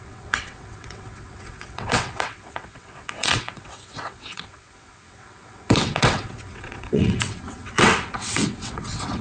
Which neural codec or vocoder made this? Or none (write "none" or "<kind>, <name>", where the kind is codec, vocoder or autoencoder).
vocoder, WaveNeXt